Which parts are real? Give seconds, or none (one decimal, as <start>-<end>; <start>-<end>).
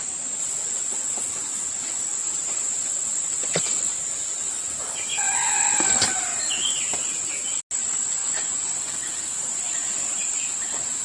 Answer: 0.0-5.1; 5.6-8.2; 8.7-11.0